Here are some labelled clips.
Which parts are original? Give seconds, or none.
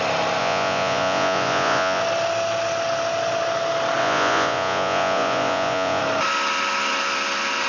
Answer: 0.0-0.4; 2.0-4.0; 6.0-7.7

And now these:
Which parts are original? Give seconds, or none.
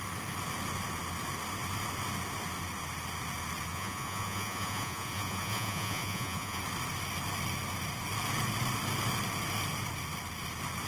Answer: 0.0-3.7; 6.6-10.9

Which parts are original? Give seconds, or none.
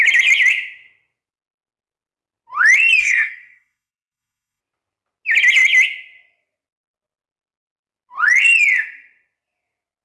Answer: 0.0-3.0; 4.6-10.0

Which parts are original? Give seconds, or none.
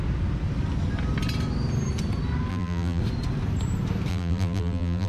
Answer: 0.0-2.5; 3.0-4.1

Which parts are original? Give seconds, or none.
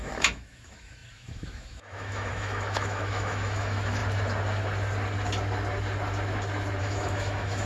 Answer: 4.0-6.8